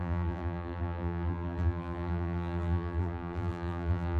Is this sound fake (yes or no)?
yes